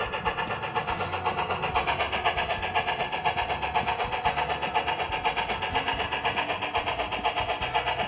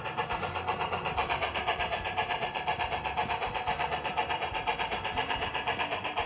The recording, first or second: first